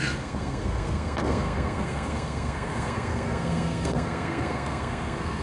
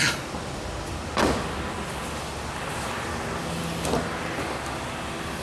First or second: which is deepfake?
first